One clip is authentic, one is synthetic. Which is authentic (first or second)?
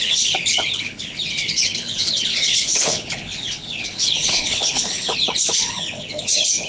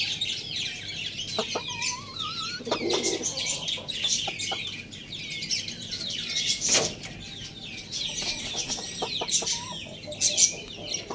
second